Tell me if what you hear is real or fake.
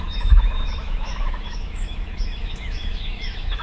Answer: fake